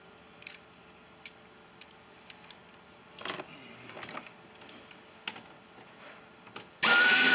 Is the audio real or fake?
real